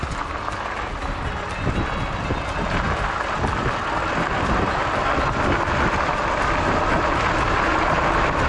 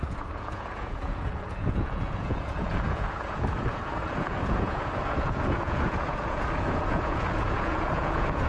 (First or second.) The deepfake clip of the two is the second